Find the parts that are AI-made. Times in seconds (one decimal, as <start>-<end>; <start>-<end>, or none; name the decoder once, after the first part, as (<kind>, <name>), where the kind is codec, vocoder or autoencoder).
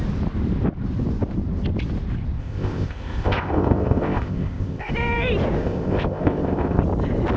2.4-4.9 (codec, ZipCodec); 5.6-6.8